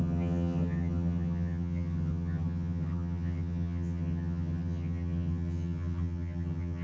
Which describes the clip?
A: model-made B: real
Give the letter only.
A